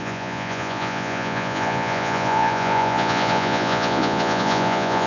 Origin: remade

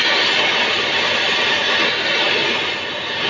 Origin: recorded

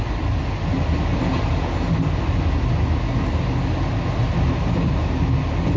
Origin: recorded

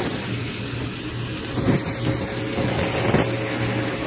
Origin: recorded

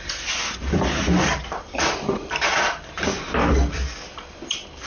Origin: recorded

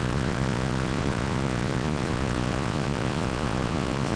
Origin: remade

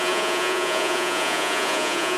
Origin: remade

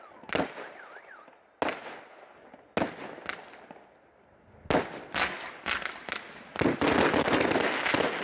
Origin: recorded